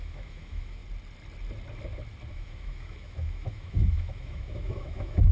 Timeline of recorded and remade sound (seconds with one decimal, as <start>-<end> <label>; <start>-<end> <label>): 0.0-0.8 remade; 0.8-2.3 recorded; 2.3-5.3 remade